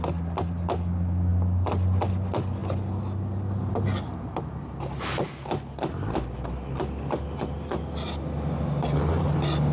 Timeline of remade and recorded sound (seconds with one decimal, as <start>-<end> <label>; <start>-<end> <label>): 0.0-9.7 recorded